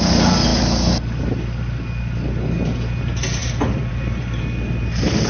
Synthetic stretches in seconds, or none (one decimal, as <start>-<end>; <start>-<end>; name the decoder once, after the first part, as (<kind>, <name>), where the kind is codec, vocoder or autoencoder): none